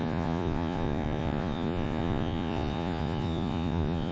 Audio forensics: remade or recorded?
remade